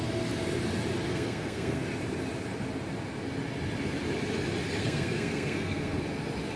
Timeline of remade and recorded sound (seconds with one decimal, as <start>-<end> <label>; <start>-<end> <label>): 0.0-1.1 recorded; 1.1-1.8 remade; 1.8-4.8 recorded; 4.8-6.0 remade; 6.0-6.6 recorded